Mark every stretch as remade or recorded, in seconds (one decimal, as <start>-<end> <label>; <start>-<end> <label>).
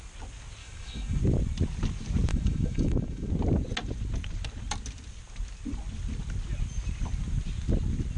0.0-0.6 recorded; 0.6-1.2 remade; 1.2-2.3 recorded; 2.3-3.3 remade; 3.3-8.2 recorded